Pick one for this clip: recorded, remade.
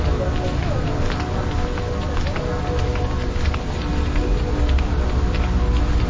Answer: recorded